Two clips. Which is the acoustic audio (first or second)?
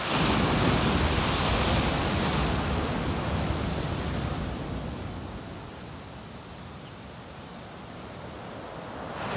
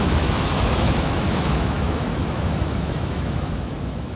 first